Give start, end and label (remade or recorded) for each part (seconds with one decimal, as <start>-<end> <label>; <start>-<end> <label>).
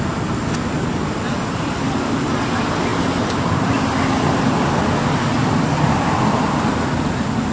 0.0-7.5 recorded